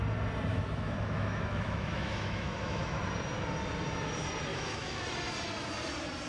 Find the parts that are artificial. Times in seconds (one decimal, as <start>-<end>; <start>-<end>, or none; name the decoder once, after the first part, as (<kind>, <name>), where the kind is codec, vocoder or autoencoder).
0.5-3.0 (autoencoder, DAC-VAE); 4.5-5.0